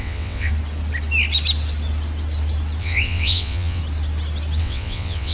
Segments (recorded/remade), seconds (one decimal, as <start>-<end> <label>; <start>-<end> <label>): 0.0-0.5 remade; 0.5-2.8 recorded; 2.8-3.8 remade; 3.8-4.6 recorded; 4.6-5.3 remade

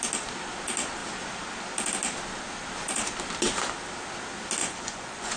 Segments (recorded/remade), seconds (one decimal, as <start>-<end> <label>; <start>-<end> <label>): 0.0-4.6 recorded; 4.6-5.4 remade

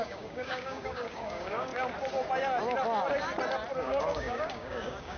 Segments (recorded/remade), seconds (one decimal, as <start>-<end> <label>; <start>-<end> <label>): 0.0-1.7 remade; 1.7-3.8 recorded; 3.8-5.2 remade

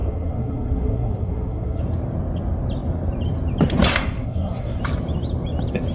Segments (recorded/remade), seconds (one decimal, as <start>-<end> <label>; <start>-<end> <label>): 0.0-1.8 remade; 1.8-3.9 recorded; 3.9-4.8 remade; 4.8-5.9 recorded

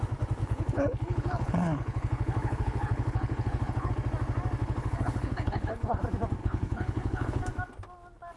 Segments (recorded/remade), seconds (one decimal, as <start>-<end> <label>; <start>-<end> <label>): 0.0-0.4 recorded; 0.4-3.9 remade; 3.9-4.6 recorded; 4.6-6.0 remade; 6.0-6.4 recorded; 6.4-7.4 remade; 7.4-8.4 recorded

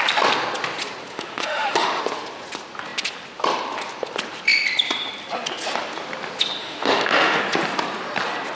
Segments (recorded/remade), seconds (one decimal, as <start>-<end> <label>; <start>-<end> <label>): 0.0-1.1 recorded; 1.1-2.0 remade; 2.0-6.6 recorded; 6.6-7.4 remade; 7.4-8.5 recorded

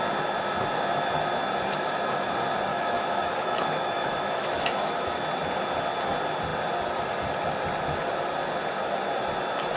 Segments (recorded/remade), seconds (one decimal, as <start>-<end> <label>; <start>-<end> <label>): 0.0-2.7 recorded; 2.7-5.2 remade; 5.2-9.8 recorded

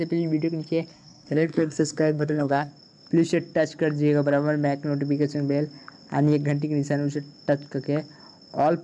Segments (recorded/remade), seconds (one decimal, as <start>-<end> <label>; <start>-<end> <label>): 0.0-0.9 recorded; 0.9-2.7 remade; 2.7-8.8 recorded